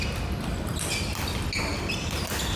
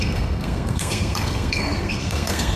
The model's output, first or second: second